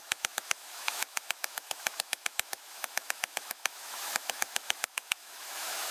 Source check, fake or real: fake